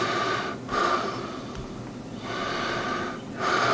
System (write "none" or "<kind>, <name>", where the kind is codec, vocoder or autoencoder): none